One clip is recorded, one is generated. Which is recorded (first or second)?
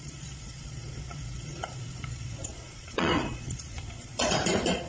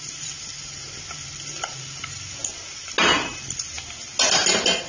second